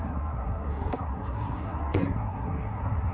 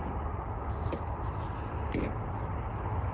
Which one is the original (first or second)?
second